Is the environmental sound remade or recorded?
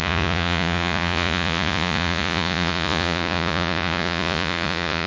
remade